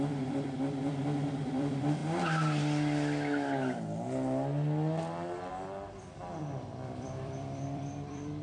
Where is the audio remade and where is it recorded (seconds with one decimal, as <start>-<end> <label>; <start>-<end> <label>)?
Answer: 0.0-2.0 remade; 2.0-5.5 recorded; 5.5-8.4 remade